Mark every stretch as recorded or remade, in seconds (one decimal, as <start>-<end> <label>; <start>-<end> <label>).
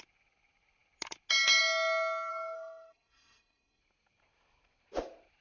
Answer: 0.0-2.3 recorded; 2.3-3.8 remade; 3.8-5.4 recorded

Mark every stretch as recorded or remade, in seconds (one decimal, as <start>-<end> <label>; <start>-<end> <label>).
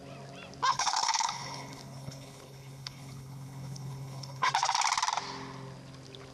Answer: 0.0-0.7 recorded; 0.7-4.5 remade; 4.5-6.3 recorded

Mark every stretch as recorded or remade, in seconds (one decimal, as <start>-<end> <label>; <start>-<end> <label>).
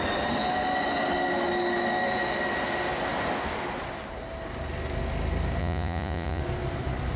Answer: 0.0-5.6 recorded; 5.6-6.4 remade; 6.4-7.2 recorded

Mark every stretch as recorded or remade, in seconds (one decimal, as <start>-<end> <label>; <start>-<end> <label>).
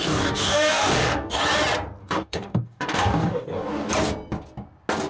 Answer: 0.0-1.4 remade; 1.4-2.0 recorded; 2.0-3.9 remade; 3.9-5.1 recorded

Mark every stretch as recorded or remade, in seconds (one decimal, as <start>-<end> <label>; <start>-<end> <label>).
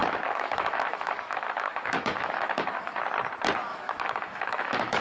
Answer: 0.0-3.0 remade; 3.0-3.7 recorded; 3.7-5.0 remade